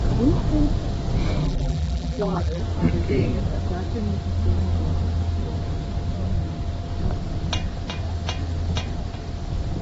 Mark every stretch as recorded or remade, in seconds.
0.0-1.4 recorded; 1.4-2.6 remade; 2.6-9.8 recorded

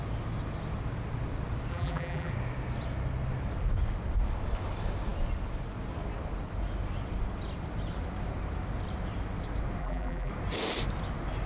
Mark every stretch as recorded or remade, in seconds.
0.0-1.7 recorded; 1.7-2.3 remade; 2.3-9.8 recorded; 9.8-10.3 remade; 10.3-11.5 recorded

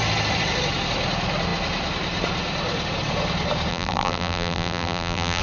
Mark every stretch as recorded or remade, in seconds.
0.0-3.7 recorded; 3.7-5.4 remade